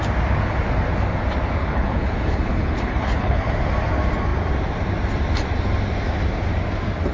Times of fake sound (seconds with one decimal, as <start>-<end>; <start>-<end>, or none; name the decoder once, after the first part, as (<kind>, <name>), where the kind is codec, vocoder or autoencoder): 1.6-3.5 (codec, HILCodec)